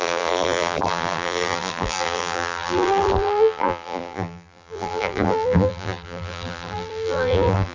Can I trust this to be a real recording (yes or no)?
no